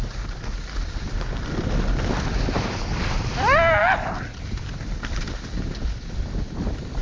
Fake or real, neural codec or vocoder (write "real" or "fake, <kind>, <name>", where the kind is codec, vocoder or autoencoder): real